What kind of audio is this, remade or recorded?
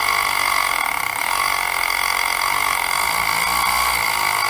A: recorded